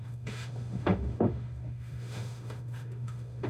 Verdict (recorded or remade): remade